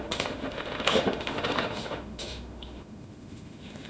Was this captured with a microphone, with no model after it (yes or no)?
no